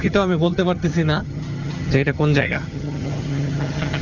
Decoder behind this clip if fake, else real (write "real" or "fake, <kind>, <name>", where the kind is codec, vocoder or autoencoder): fake, vocoder, HiFi-GAN